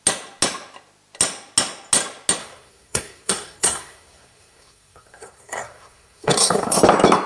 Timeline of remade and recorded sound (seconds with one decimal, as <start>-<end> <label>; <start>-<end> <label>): 0.0-2.4 recorded; 2.4-6.8 remade; 6.8-7.3 recorded